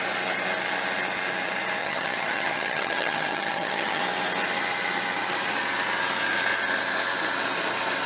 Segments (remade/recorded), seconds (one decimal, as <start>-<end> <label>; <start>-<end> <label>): 0.0-1.8 recorded; 1.8-4.0 remade; 4.0-8.1 recorded